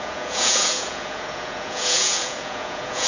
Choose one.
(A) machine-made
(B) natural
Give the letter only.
A